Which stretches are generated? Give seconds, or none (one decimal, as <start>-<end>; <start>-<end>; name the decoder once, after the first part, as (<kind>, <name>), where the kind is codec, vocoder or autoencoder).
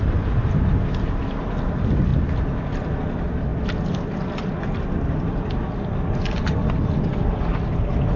none